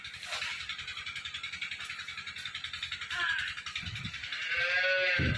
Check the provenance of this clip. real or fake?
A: real